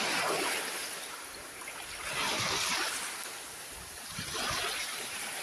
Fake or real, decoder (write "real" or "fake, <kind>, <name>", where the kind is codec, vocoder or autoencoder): fake, vocoder, BigVGAN v2